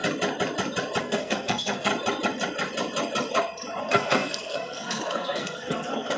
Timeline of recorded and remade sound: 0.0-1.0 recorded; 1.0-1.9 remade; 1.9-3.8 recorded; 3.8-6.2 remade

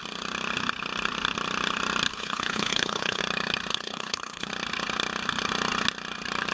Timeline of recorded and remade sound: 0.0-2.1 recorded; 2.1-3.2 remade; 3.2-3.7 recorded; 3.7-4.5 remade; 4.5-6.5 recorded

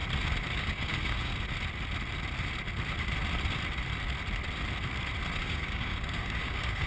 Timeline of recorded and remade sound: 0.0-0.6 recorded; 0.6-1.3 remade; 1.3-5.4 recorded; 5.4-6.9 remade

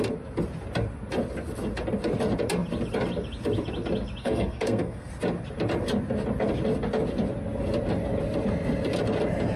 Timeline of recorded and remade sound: 0.0-4.2 recorded; 4.2-5.1 remade; 5.1-9.6 recorded

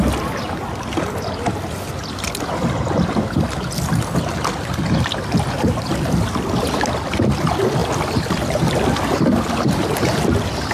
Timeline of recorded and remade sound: 0.0-10.7 recorded

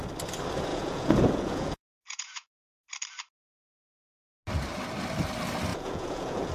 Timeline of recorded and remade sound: 0.0-0.7 recorded; 0.7-2.7 remade; 2.7-5.7 recorded; 5.7-6.5 remade